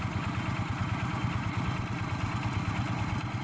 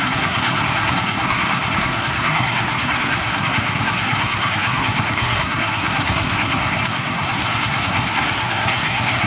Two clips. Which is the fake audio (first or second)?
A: second